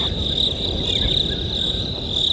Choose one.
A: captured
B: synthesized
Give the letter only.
A